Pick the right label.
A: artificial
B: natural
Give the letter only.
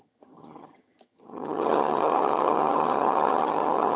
A